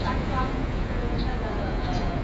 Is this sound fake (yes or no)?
yes